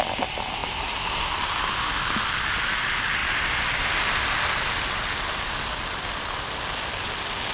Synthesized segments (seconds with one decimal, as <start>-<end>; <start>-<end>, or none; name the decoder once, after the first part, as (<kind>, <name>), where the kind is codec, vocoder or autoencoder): none